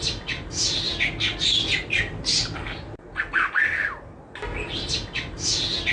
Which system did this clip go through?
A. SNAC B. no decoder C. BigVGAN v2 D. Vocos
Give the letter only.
B